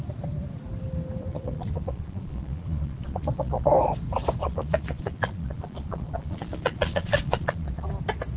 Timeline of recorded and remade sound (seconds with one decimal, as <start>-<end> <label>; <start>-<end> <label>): 0.0-1.3 recorded; 1.3-3.7 remade; 3.7-4.4 recorded; 4.4-7.9 remade; 7.9-8.4 recorded